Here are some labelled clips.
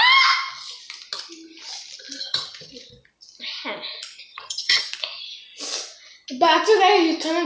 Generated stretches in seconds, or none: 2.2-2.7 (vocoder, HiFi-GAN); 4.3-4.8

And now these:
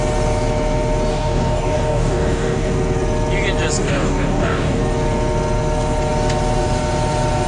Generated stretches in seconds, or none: 1.1-2.7 (codec, DAC); 3.8-4.8